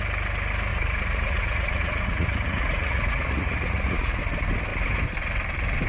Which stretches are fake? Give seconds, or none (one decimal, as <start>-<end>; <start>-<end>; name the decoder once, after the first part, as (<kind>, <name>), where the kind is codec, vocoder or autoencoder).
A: 0.7-4.2 (vocoder, Vocos)